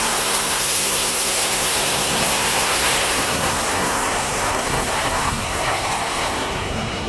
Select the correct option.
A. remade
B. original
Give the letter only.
A